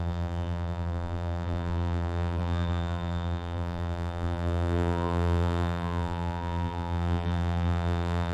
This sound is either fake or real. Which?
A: fake